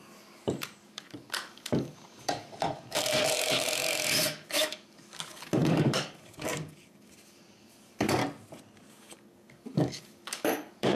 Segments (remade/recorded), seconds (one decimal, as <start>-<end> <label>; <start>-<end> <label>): 0.0-8.2 remade; 8.2-8.9 recorded; 8.9-11.0 remade